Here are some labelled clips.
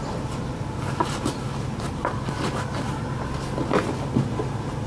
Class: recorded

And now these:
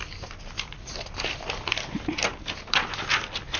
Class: recorded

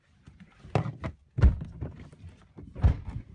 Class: recorded